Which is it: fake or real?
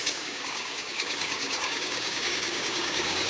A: fake